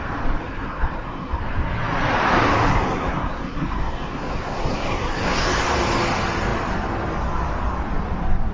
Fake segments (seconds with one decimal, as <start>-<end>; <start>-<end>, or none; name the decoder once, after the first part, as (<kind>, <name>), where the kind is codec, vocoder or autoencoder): 0.4-1.4 (codec, SNAC); 2.7-5.6